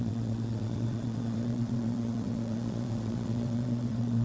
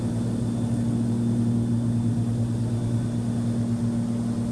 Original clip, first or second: second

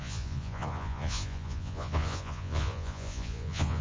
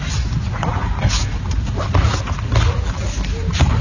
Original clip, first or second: second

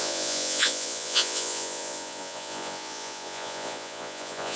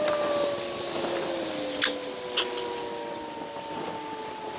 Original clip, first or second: second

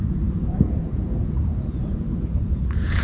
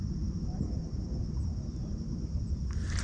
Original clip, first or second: second